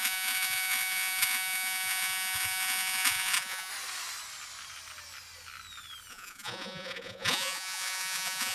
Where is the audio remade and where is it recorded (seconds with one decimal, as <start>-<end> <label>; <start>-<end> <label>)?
0.0-3.7 remade; 3.7-6.1 recorded; 6.1-8.5 remade